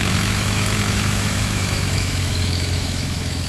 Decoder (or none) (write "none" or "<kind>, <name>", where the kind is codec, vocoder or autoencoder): autoencoder, DAC-VAE